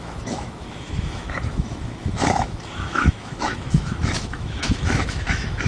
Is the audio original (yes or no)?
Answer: no